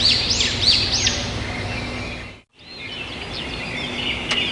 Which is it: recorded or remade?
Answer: recorded